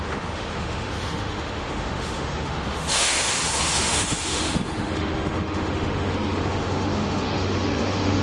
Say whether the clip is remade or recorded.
remade